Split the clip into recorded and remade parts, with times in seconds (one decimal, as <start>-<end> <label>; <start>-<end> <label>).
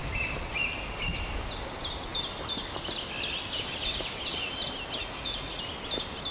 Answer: 0.0-5.0 recorded; 5.0-5.6 remade; 5.6-6.3 recorded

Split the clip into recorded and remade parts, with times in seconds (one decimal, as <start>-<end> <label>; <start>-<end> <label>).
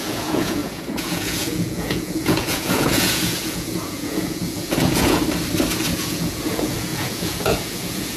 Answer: 0.0-5.2 remade; 5.2-5.8 recorded; 5.8-8.2 remade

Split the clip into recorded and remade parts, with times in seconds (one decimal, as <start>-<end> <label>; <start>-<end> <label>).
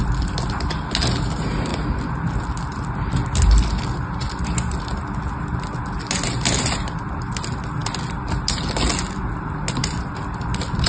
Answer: 0.0-10.9 recorded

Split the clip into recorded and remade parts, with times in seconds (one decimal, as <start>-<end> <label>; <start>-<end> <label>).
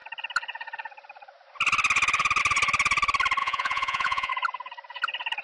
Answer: 0.0-3.4 recorded; 3.4-4.3 remade; 4.3-5.4 recorded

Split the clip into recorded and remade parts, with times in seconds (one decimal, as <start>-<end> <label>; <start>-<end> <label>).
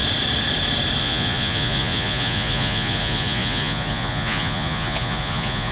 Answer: 0.0-1.0 recorded; 1.0-5.7 remade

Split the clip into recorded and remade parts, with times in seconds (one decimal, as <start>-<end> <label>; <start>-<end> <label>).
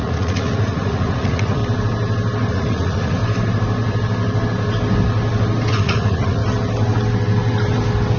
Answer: 0.0-1.6 remade; 1.6-2.5 recorded; 2.5-3.2 remade; 3.2-5.7 recorded; 5.7-6.4 remade; 6.4-8.2 recorded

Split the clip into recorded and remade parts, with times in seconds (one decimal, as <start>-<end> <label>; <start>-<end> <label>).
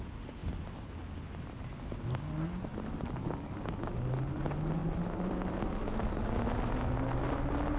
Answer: 0.0-7.8 recorded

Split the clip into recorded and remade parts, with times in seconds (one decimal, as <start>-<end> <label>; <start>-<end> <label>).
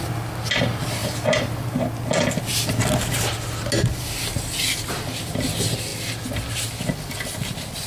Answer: 0.0-7.9 recorded